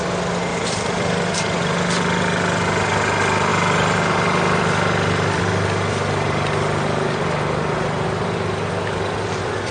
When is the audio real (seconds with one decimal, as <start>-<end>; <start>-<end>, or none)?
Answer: 0.0-0.5; 1.6-3.5; 5.4-9.7